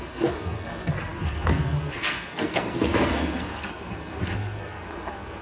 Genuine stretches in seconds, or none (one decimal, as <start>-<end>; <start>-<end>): none